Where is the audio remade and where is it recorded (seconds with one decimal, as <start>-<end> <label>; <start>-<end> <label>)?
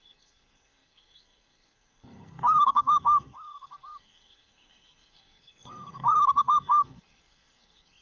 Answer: 0.0-8.0 remade